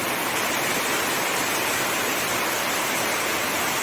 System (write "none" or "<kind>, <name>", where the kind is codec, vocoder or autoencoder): none